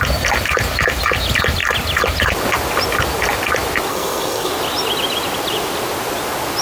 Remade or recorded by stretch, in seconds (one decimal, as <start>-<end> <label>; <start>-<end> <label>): 0.0-3.9 recorded; 3.9-4.5 remade; 4.5-6.6 recorded